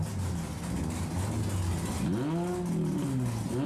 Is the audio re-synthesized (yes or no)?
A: no